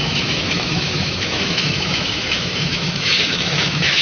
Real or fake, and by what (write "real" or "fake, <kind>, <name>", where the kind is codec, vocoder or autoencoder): fake, autoencoder, DAC-VAE